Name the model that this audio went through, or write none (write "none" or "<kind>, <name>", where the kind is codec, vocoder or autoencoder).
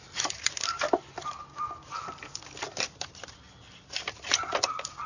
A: none